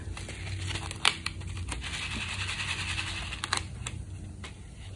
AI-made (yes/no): no